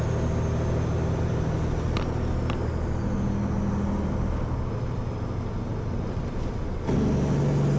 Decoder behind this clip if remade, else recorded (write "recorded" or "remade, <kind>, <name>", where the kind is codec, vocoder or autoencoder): recorded